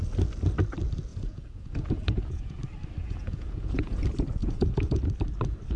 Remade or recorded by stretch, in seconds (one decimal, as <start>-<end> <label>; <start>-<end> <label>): 0.0-1.1 recorded; 1.1-2.6 remade; 2.6-3.0 recorded; 3.0-4.0 remade; 4.0-4.4 recorded; 4.4-5.0 remade; 5.0-5.8 recorded